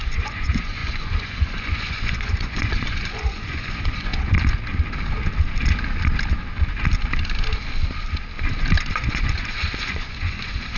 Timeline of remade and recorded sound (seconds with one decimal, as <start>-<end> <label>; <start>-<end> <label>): 0.0-4.1 remade; 4.1-8.9 recorded; 8.9-10.8 remade